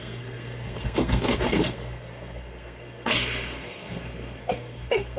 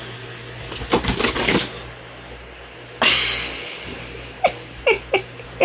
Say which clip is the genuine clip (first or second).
second